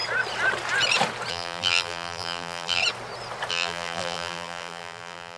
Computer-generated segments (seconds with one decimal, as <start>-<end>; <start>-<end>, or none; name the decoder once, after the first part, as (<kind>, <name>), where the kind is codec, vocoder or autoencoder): 1.3-2.8 (vocoder, BigVGAN v2); 3.5-5.4